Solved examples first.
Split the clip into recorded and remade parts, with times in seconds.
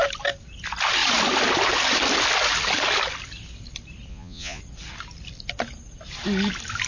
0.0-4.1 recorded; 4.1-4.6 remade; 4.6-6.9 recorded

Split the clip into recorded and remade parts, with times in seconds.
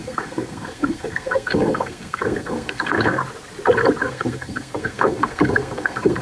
0.0-3.2 remade; 3.2-4.0 recorded; 4.0-6.2 remade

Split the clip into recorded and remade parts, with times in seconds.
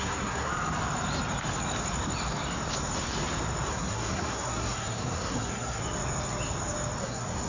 0.0-0.5 remade; 0.5-3.7 recorded; 3.7-5.8 remade; 5.8-7.0 recorded; 7.0-7.5 remade